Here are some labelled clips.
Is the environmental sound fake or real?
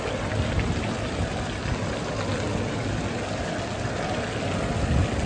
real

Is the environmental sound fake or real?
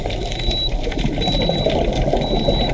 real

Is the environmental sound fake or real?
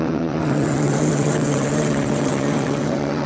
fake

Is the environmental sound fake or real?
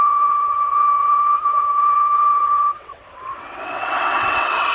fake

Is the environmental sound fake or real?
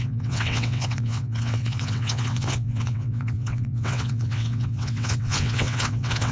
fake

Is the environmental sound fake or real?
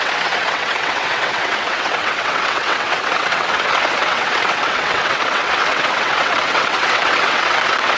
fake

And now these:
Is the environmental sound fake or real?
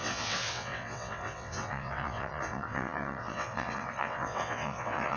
fake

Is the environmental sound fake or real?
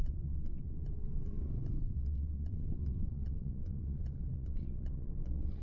fake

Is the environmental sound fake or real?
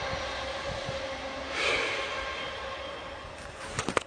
real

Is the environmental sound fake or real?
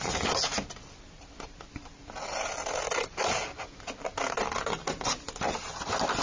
real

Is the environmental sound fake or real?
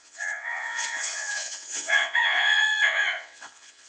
fake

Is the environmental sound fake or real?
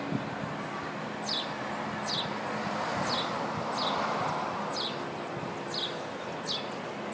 real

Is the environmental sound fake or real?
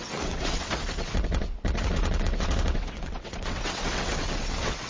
fake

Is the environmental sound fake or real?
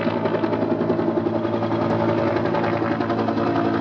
real